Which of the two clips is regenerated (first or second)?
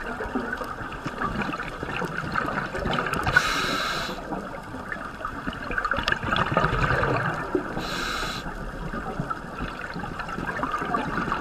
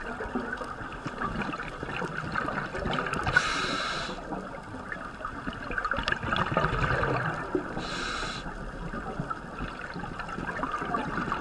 first